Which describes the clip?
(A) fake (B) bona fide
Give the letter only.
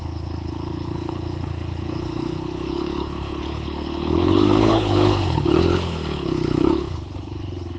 A